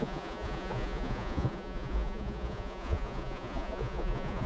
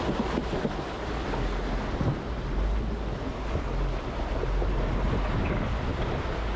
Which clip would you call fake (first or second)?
first